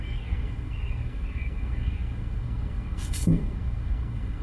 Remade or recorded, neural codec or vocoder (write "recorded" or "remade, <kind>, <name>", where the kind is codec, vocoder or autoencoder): remade, codec, SNAC